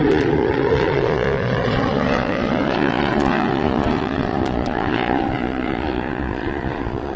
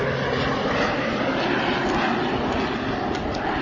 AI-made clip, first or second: first